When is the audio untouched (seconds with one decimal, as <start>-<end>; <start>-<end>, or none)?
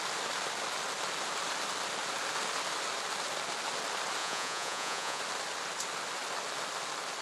0.0-4.2; 5.2-7.2